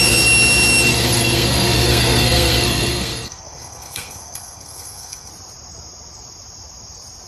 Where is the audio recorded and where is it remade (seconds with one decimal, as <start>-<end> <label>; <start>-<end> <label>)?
0.0-0.9 recorded; 0.9-5.3 remade; 5.3-7.3 recorded